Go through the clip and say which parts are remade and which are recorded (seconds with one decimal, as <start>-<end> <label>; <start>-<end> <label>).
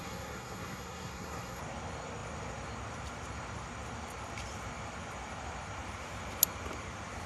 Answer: 0.0-1.6 remade; 1.6-7.3 recorded